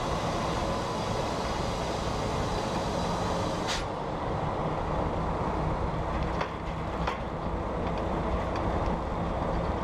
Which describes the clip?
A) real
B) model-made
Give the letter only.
A